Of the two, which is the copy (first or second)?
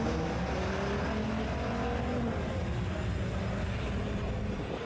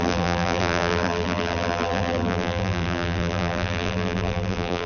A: second